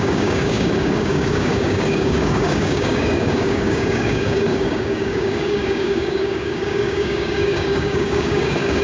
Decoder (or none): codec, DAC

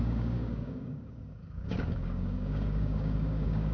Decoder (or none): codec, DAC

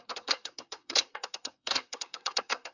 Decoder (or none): codec, SNAC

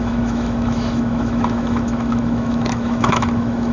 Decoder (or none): autoencoder, DAC-VAE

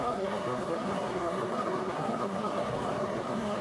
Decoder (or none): codec, SNAC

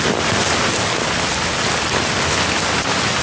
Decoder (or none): none